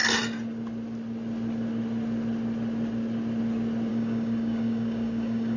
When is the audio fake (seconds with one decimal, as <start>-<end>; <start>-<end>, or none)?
3.9-5.6